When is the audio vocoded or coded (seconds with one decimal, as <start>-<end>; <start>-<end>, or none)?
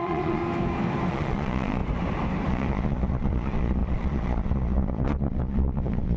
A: 0.0-0.4; 1.1-1.8; 2.5-6.2